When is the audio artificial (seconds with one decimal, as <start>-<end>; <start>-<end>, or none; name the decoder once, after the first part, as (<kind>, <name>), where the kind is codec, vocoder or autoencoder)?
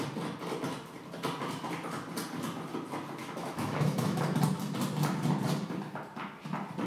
3.2-4.2 (autoencoder, DAC-VAE)